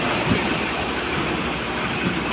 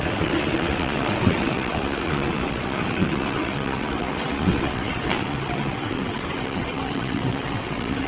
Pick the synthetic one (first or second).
second